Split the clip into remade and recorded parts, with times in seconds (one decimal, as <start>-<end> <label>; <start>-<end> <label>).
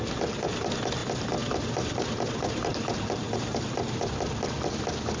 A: 0.0-1.0 recorded; 1.0-4.1 remade; 4.1-5.2 recorded